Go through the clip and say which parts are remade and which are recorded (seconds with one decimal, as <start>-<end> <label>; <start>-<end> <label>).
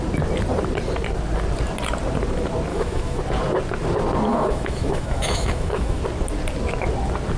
0.0-2.7 recorded; 2.7-3.2 remade; 3.2-4.3 recorded; 4.3-6.0 remade; 6.0-7.4 recorded